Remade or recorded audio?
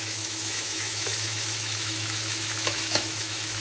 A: remade